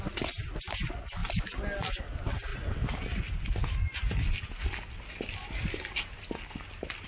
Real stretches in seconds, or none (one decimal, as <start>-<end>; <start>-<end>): 0.0-7.1